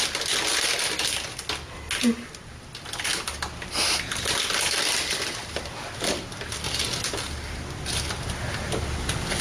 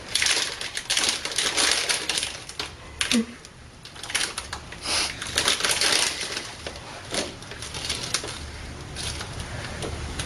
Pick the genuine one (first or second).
first